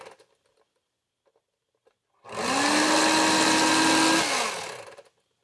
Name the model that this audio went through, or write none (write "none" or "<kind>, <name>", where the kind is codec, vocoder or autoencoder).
none